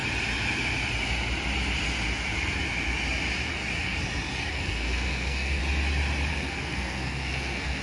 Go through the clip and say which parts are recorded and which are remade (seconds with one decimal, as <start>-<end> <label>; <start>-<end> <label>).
0.0-4.5 recorded; 4.5-5.6 remade; 5.6-6.3 recorded; 6.3-7.8 remade